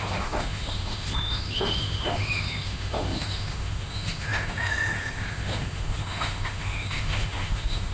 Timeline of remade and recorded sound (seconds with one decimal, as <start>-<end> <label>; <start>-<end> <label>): 0.0-7.9 remade